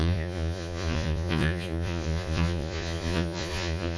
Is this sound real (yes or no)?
no